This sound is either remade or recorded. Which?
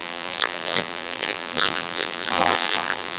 remade